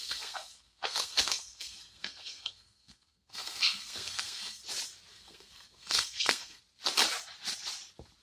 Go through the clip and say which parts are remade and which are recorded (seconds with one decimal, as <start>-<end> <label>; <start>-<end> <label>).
0.0-4.6 remade; 4.6-5.1 recorded; 5.1-6.6 remade; 6.6-8.2 recorded